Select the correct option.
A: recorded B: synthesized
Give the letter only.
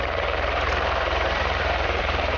B